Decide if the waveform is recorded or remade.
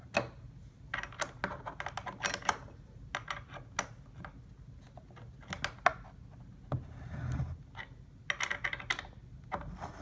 recorded